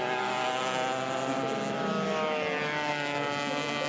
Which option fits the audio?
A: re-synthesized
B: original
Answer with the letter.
B